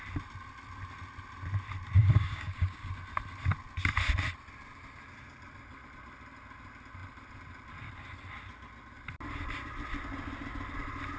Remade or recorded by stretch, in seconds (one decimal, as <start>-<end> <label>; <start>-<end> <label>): 0.0-2.0 recorded; 2.0-2.9 remade; 2.9-11.2 recorded